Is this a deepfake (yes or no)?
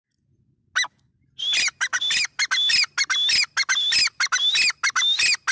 no